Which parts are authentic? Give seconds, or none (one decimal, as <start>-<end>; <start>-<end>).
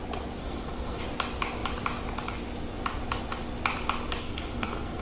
0.0-0.4; 1.0-4.2